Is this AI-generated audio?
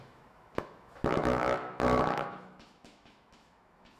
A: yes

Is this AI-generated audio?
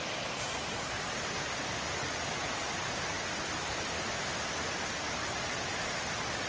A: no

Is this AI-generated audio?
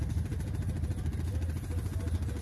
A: no